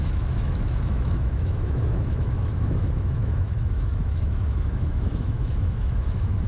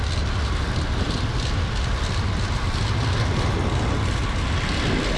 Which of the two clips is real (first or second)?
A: second